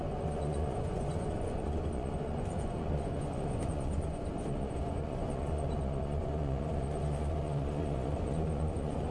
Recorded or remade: remade